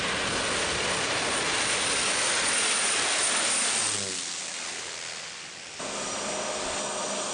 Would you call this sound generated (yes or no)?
no